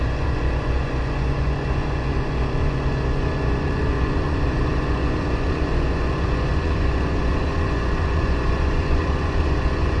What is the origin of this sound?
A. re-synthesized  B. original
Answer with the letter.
A